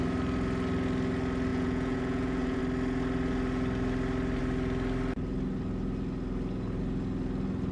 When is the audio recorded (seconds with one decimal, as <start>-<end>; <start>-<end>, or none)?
0.0-1.5; 2.6-7.7